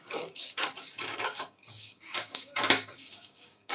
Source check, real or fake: fake